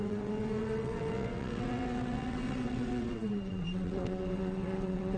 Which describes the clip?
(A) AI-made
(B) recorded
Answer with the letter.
A